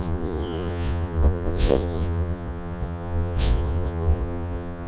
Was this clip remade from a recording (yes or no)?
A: yes